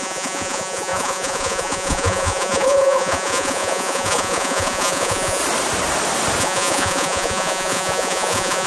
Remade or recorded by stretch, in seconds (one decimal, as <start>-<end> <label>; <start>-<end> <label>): 0.0-5.4 remade; 5.4-6.4 recorded; 6.4-8.7 remade